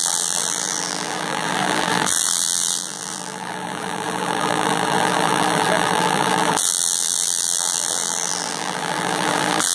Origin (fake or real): fake